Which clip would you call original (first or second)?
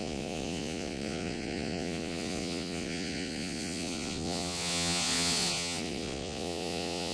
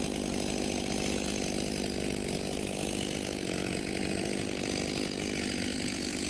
second